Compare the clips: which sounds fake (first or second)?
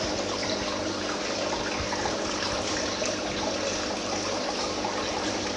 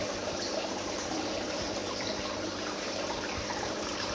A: second